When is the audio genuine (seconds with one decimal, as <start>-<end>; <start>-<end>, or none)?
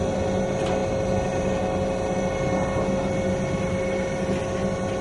0.0-5.0